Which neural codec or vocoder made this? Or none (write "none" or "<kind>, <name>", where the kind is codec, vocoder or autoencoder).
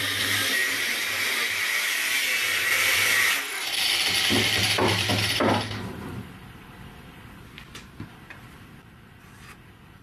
vocoder, BigVGAN v2